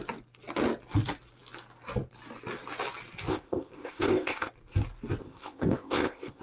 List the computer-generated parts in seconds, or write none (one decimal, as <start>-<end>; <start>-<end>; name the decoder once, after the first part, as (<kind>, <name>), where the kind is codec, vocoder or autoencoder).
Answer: 3.3-4.5 (codec, ZipCodec); 5.2-6.4